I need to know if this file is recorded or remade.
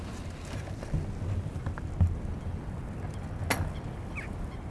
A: recorded